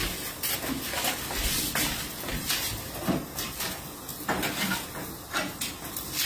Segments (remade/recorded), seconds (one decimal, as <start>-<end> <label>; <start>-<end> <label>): 0.0-2.3 recorded; 2.3-3.1 remade; 3.1-6.3 recorded